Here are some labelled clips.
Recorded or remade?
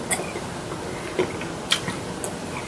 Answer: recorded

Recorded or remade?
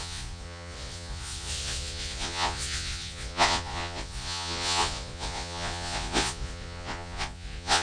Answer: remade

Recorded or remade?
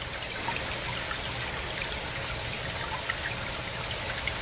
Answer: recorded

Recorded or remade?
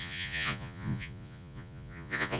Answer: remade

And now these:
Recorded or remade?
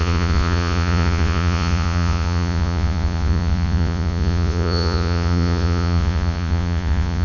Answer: remade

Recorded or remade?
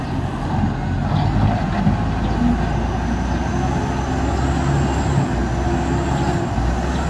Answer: recorded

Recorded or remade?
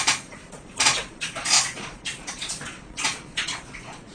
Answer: remade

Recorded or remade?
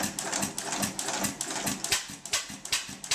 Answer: recorded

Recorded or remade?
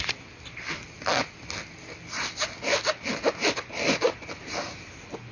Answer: recorded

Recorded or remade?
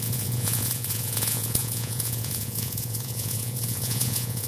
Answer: remade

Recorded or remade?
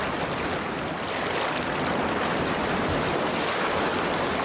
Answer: recorded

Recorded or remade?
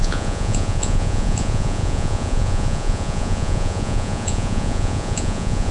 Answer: remade